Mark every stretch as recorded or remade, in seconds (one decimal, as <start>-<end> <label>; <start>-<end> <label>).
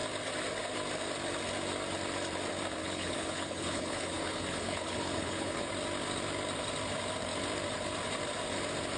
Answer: 0.0-2.8 recorded; 2.8-5.7 remade; 5.7-9.0 recorded